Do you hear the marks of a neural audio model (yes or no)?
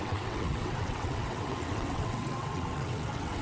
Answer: yes